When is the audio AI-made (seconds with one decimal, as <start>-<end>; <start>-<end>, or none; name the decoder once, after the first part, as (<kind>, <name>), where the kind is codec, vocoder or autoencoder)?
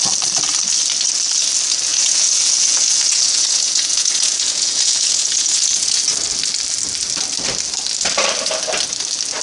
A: 1.9-6.0 (vocoder, Vocos)